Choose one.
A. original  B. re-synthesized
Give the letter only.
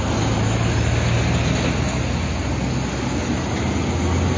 A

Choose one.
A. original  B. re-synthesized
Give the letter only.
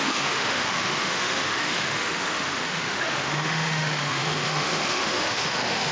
B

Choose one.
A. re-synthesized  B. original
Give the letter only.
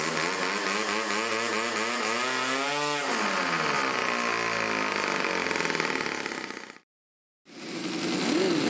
B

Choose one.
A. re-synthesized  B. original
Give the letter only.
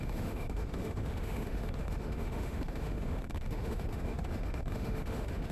A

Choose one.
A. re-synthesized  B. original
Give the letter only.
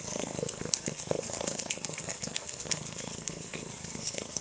A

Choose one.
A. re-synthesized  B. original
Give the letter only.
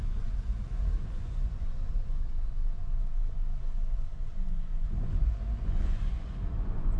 A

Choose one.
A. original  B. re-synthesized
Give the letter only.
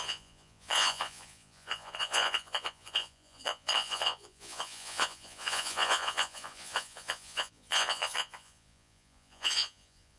B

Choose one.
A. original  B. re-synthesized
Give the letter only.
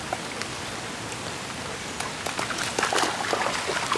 A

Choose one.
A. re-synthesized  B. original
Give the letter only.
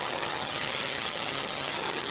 A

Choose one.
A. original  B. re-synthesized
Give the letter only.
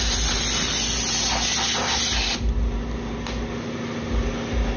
A